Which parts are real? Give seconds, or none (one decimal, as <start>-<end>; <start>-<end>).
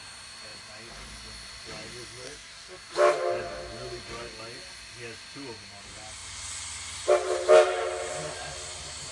0.0-2.2; 2.9-9.1